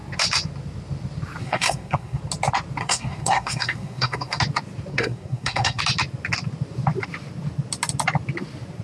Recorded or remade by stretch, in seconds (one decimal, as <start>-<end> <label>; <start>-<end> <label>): 0.0-1.4 recorded; 1.4-2.2 remade; 2.2-2.8 recorded; 2.8-4.4 remade; 4.4-4.9 recorded; 4.9-5.8 remade; 5.8-8.8 recorded